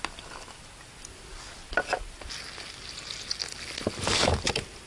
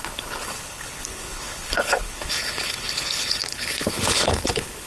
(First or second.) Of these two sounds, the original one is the first